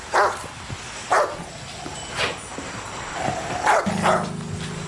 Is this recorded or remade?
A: recorded